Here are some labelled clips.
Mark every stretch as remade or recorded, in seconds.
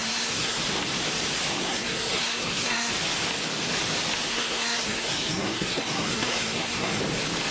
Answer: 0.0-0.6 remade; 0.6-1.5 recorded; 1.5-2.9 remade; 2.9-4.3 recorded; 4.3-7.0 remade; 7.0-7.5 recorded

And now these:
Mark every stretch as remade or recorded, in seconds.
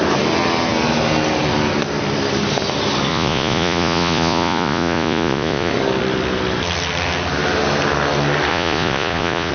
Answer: 0.0-3.1 recorded; 3.1-5.7 remade; 5.7-8.5 recorded; 8.5-9.5 remade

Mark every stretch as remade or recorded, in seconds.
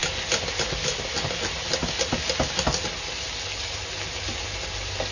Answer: 0.0-5.1 recorded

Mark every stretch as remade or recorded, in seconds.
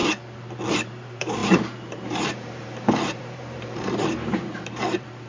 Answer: 0.0-0.7 recorded; 0.7-5.3 remade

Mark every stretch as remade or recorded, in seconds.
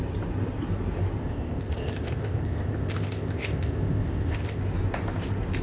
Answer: 0.0-1.2 recorded; 1.2-4.6 remade; 4.6-5.6 recorded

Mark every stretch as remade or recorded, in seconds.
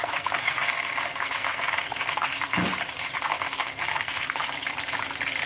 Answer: 0.0-2.6 remade; 2.6-3.3 recorded; 3.3-4.4 remade; 4.4-5.5 recorded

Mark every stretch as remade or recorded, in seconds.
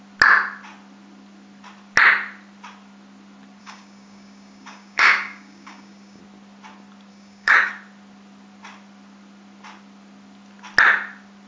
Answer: 0.0-3.6 recorded; 3.6-6.2 remade; 6.2-7.1 recorded; 7.1-7.7 remade; 7.7-11.5 recorded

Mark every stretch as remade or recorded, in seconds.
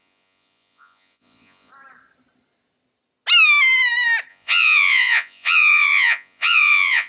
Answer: 0.0-1.7 remade; 1.7-4.3 recorded; 4.3-7.1 remade